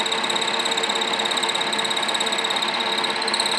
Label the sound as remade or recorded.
recorded